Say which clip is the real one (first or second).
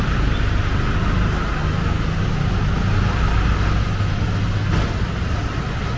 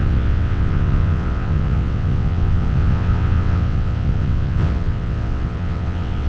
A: first